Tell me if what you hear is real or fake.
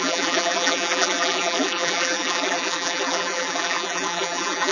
fake